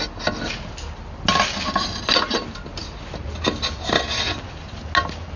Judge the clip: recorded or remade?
recorded